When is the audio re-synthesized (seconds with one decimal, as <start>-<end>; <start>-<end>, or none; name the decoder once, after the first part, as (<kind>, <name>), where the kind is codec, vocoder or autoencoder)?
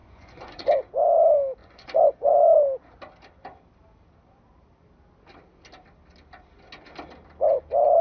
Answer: 0.0-0.7 (vocoder, Vocos); 1.6-2.3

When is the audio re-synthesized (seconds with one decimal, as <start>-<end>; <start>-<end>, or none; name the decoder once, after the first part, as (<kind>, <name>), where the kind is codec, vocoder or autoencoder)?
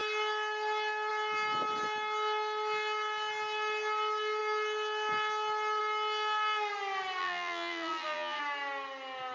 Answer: 7.2-8.4 (vocoder, BigVGAN v2)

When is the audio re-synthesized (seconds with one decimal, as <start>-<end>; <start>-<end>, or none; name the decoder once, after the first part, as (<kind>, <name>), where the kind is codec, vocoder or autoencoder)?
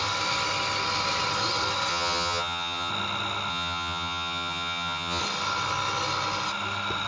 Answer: 1.9-2.9 (vocoder, HiFi-GAN); 3.5-5.2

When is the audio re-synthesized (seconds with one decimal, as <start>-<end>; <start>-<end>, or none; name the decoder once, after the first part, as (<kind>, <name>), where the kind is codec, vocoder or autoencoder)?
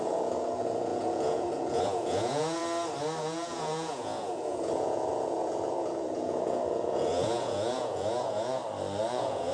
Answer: 0.0-2.6 (vocoder, Vocos); 3.2-8.6; 9.1-9.5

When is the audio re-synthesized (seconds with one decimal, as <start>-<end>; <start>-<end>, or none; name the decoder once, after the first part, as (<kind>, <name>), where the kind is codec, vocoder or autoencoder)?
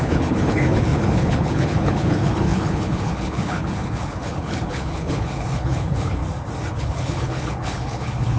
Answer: 0.0-6.2 (codec, HILCodec); 6.8-8.4